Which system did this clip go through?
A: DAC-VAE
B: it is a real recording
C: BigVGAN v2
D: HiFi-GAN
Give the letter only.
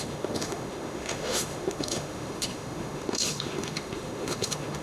A